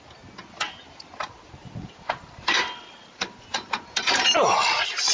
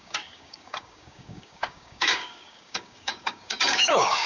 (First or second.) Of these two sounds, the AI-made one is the second